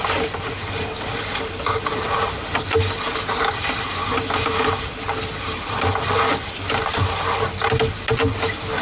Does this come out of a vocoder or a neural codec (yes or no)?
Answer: no